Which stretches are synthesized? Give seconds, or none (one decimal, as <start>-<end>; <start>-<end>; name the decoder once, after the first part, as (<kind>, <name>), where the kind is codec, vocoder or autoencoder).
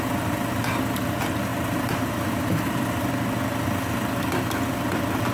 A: 1.5-3.1 (vocoder, BigVGAN v2)